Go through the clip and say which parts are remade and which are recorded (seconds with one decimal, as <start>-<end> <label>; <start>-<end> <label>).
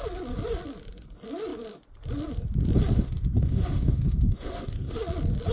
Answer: 0.0-2.9 recorded; 2.9-5.0 remade; 5.0-5.5 recorded